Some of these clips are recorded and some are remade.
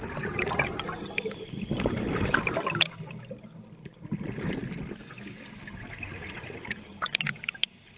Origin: recorded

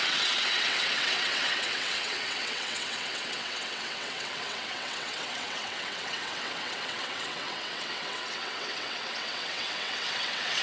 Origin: remade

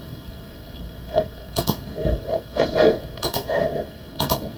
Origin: remade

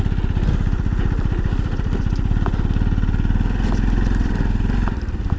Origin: recorded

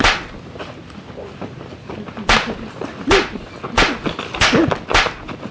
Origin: recorded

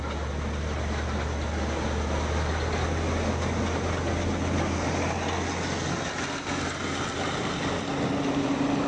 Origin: recorded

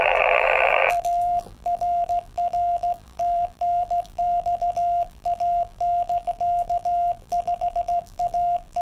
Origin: remade